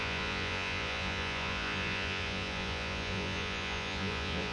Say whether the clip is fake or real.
fake